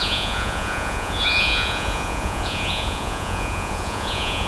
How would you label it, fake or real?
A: fake